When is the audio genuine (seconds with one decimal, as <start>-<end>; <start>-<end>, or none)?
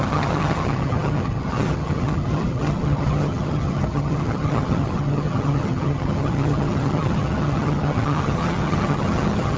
none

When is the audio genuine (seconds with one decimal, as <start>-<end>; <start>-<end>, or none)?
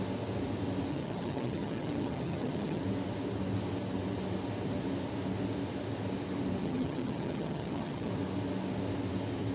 0.0-0.9; 2.8-6.6; 8.1-9.5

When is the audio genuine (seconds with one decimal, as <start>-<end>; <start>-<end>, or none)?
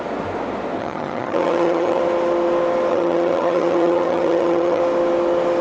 0.0-0.8; 2.0-2.9; 4.8-5.6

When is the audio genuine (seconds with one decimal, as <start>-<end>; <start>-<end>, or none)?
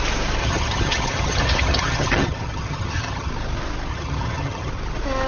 0.0-0.4; 3.3-3.9; 4.7-5.3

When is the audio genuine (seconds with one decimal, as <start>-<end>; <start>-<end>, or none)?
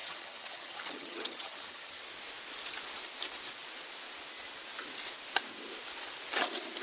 2.0-6.8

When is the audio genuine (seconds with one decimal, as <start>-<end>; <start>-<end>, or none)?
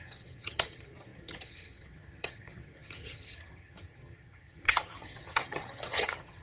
none